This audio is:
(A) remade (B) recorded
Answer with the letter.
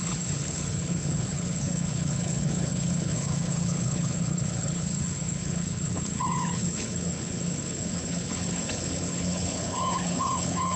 A